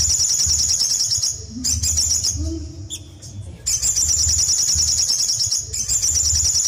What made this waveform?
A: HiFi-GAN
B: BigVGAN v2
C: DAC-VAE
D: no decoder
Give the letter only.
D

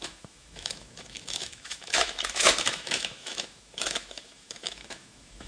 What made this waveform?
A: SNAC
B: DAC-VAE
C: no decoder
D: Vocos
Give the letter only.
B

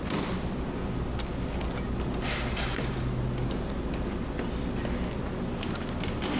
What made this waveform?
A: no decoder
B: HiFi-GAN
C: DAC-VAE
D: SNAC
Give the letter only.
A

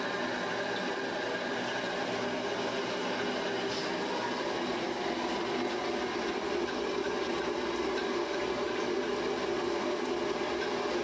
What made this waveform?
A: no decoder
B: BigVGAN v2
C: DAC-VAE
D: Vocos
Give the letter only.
A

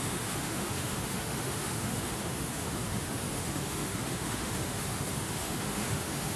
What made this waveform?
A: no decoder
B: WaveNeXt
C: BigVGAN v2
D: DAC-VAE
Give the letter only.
D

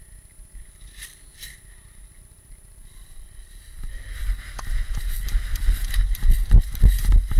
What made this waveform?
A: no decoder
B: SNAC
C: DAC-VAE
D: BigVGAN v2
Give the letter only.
A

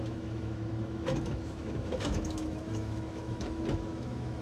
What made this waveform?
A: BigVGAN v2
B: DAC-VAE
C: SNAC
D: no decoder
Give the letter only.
B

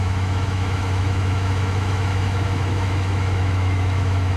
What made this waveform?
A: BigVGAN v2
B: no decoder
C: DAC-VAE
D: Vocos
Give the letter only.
C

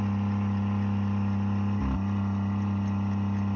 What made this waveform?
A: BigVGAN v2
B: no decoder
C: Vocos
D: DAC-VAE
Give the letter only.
B